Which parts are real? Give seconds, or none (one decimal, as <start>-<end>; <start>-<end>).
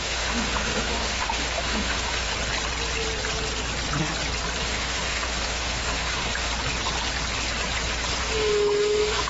2.3-4.6; 6.5-8.2